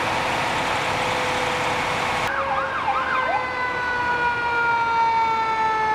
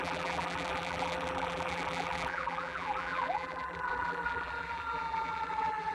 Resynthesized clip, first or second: second